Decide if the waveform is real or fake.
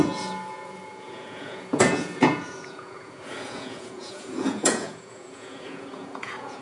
fake